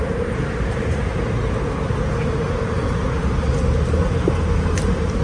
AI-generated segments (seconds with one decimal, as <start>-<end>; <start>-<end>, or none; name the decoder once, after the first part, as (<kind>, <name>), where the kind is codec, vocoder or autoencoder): 0.0-1.1 (vocoder, BigVGAN v2); 4.0-5.2